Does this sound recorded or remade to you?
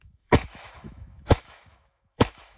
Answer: remade